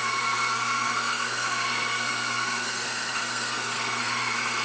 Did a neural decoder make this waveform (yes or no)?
yes